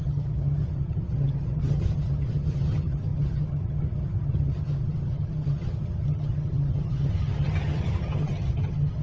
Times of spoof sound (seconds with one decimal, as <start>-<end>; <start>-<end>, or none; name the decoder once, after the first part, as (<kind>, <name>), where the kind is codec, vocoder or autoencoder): 0.0-9.0 (vocoder, HiFi-GAN)

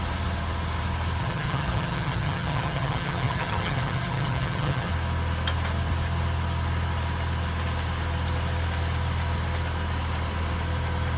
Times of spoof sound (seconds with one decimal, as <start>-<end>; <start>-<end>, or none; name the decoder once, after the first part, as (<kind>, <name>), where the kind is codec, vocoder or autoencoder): 1.2-4.9 (vocoder, HiFi-GAN)

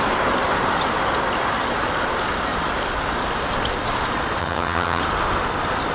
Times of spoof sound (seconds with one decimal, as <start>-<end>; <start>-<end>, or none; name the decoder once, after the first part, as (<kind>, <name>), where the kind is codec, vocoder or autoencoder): 4.4-5.0 (vocoder, HiFi-GAN)

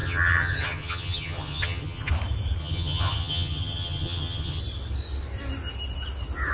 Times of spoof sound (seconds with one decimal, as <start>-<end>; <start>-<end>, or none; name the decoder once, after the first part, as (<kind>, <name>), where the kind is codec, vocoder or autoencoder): 0.0-2.1 (vocoder, HiFi-GAN); 2.6-4.6

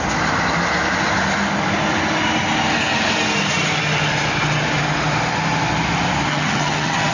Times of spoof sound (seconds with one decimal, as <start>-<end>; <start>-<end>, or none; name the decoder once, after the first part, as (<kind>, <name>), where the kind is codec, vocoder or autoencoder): 6.3-7.1 (vocoder, HiFi-GAN)

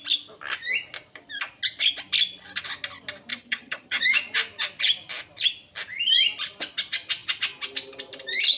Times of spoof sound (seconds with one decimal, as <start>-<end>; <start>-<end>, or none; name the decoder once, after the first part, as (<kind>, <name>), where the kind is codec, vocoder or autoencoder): 3.3-4.0 (vocoder, HiFi-GAN)